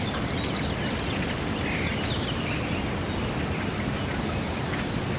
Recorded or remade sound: recorded